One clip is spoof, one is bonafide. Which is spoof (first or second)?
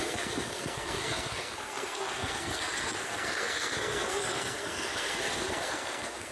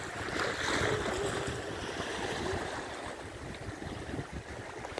first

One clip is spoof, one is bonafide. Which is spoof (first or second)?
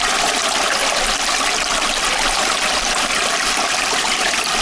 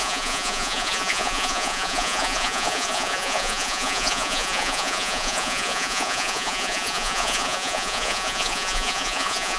second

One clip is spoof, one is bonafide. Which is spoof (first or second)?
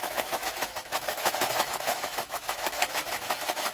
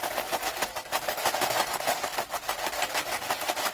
first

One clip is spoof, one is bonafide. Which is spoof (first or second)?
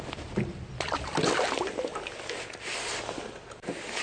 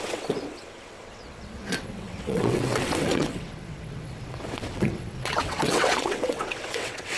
second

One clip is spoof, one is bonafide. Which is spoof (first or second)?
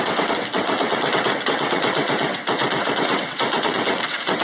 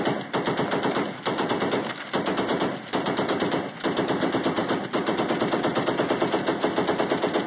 first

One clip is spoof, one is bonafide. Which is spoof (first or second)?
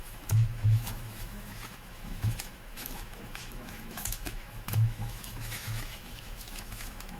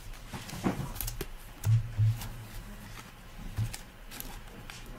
first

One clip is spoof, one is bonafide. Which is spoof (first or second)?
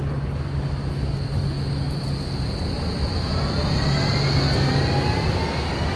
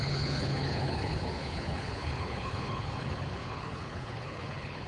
second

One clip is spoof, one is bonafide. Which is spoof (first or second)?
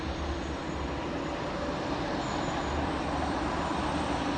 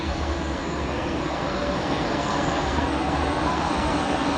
second